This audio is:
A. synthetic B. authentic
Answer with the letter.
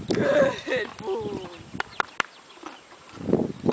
B